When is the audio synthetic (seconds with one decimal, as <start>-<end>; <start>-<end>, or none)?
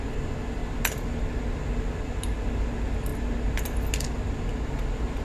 none